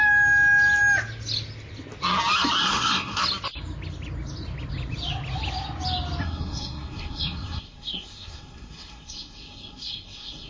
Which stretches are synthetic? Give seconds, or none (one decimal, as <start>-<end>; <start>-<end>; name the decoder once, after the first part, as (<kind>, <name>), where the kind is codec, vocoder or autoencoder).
2.6-3.2 (codec, SNAC); 6.2-10.5